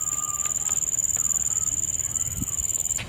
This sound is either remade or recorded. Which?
recorded